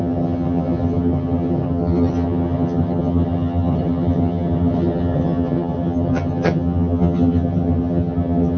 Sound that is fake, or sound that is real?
fake